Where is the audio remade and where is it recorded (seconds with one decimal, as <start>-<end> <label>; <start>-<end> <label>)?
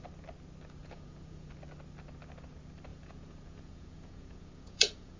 0.0-0.8 recorded; 0.8-1.5 remade; 1.5-2.9 recorded; 2.9-5.2 remade